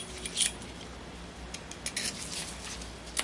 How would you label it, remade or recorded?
recorded